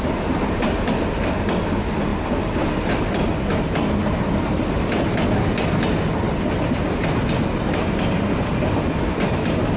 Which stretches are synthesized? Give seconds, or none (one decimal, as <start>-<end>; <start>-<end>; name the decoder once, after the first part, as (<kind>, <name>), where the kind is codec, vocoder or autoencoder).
none